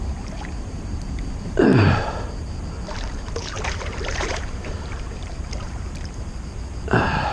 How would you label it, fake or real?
fake